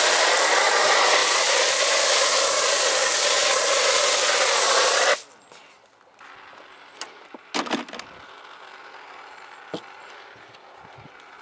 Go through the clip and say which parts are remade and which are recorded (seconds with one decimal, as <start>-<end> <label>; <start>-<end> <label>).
0.0-11.4 recorded